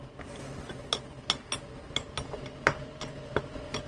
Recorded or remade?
recorded